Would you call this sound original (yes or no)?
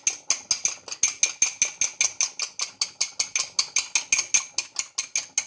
yes